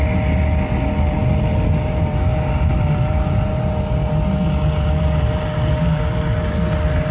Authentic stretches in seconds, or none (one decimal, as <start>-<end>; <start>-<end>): 0.0-5.7; 6.2-7.1